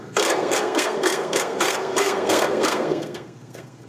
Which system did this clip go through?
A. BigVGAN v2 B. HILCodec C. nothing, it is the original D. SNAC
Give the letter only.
D